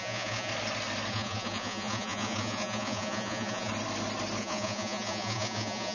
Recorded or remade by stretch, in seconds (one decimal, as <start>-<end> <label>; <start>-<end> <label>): 0.0-0.5 remade; 0.5-1.1 recorded; 1.1-3.7 remade; 3.7-4.4 recorded; 4.4-5.9 remade